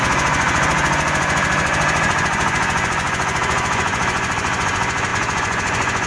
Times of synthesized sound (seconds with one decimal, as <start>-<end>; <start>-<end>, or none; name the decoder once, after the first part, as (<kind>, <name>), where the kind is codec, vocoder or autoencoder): 0.0-6.1 (vocoder, Vocos)